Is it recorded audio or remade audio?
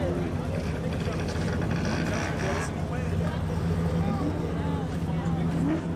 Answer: recorded